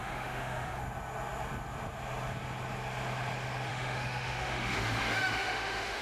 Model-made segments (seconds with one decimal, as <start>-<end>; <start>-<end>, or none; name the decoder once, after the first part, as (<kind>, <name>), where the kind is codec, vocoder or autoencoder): 0.0-0.8 (autoencoder, DAC-VAE); 3.7-6.0